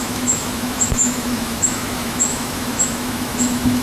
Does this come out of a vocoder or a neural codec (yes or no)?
yes